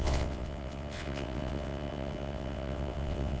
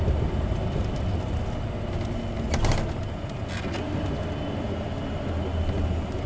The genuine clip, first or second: second